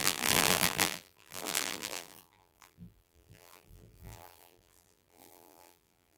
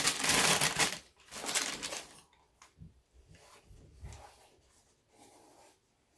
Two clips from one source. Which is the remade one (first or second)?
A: first